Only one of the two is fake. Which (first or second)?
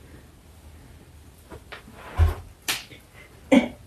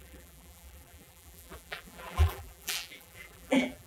second